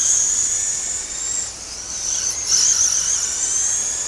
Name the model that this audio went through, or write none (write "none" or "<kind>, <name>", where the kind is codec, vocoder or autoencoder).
none